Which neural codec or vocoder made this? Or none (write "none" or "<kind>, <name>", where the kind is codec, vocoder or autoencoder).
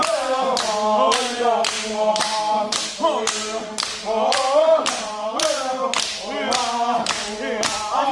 none